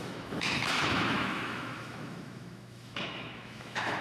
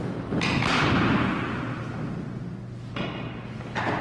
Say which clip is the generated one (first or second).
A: first